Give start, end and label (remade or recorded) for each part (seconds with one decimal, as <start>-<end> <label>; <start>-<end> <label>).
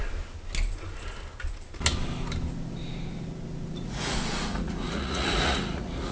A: 0.0-3.7 recorded; 3.7-6.1 remade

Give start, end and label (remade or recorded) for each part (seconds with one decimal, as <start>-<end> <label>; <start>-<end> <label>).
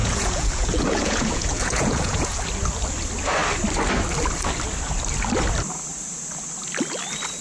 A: 0.0-2.4 remade; 2.4-7.4 recorded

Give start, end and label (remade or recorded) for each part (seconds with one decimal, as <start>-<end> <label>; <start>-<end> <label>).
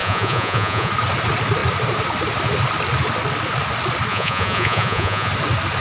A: 0.0-0.9 remade; 0.9-4.1 recorded; 4.1-5.3 remade; 5.3-5.8 recorded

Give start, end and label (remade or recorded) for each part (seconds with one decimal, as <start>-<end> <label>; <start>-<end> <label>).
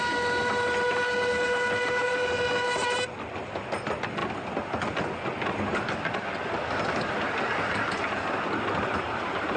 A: 0.0-9.6 recorded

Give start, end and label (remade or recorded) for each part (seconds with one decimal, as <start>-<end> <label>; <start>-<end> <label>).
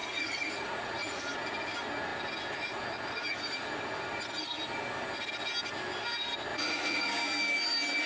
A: 0.0-1.2 remade; 1.2-6.5 recorded; 6.5-7.1 remade; 7.1-8.1 recorded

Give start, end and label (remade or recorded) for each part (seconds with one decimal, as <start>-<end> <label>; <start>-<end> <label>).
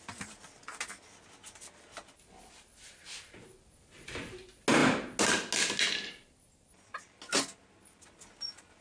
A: 0.0-8.8 recorded